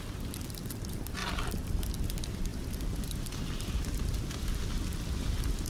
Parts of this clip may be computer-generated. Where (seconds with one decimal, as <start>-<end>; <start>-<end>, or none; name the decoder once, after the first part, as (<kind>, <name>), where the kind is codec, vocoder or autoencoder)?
1.2-1.9 (vocoder, BigVGAN v2)